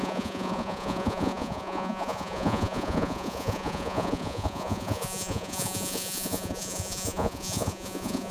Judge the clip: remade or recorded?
remade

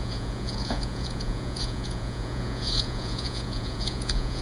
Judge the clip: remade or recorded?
remade